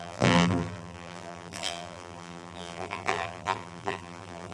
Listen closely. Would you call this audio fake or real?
fake